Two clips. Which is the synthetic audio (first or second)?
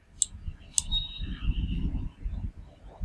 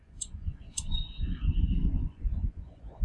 second